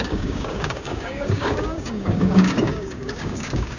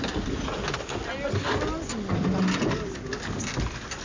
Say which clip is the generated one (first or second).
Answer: first